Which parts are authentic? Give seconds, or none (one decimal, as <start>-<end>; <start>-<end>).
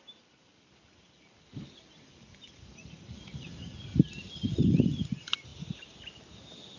0.0-6.8